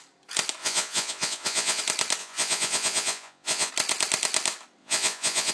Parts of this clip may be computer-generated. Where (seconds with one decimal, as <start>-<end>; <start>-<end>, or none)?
0.6-1.8; 2.2-3.7; 4.8-5.5